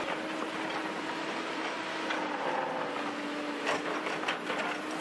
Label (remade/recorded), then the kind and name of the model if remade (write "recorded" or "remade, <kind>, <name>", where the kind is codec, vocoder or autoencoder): recorded